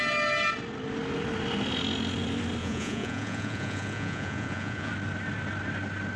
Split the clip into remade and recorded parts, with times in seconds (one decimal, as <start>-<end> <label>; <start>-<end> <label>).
0.0-2.6 recorded; 2.6-4.9 remade; 4.9-6.2 recorded